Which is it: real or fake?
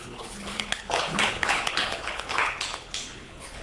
fake